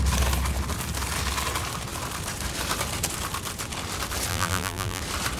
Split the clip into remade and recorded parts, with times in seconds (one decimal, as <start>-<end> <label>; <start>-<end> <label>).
0.0-4.3 recorded; 4.3-5.0 remade; 5.0-5.4 recorded